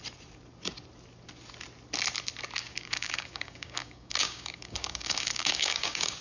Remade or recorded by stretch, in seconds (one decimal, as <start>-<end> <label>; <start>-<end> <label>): 0.0-2.6 recorded; 2.6-6.2 remade